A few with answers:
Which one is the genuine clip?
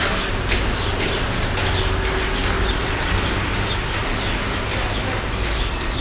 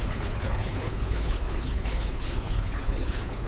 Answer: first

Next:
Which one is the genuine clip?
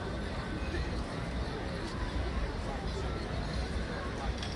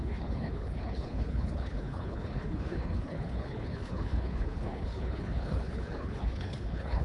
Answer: first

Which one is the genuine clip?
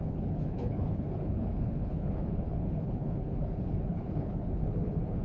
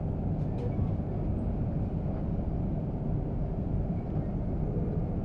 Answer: second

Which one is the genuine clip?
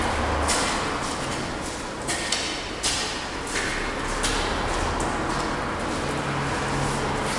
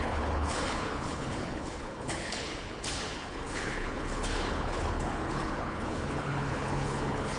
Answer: first